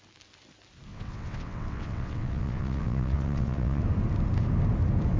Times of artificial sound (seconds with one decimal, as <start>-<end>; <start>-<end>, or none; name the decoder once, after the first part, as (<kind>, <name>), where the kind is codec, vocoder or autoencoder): 0.9-3.8 (vocoder, WaveNeXt)